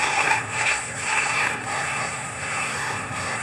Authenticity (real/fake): fake